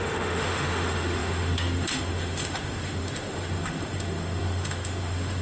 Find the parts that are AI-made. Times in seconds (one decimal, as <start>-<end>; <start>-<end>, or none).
0.0-5.4